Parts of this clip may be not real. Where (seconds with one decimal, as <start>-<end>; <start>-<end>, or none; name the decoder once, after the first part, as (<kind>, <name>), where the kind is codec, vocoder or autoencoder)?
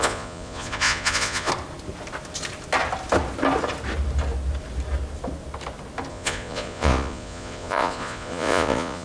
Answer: 0.0-1.5 (vocoder, Vocos); 6.1-9.0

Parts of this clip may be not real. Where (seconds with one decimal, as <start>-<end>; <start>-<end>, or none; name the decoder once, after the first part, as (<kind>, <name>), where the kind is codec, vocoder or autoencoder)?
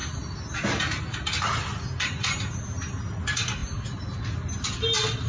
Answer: none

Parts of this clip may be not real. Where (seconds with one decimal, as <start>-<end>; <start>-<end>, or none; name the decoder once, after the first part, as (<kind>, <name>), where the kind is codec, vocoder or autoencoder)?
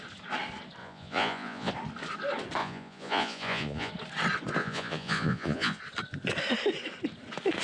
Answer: 0.8-1.7 (vocoder, Vocos); 2.6-3.9; 4.6-5.8